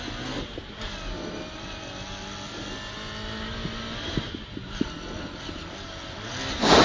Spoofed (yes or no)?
no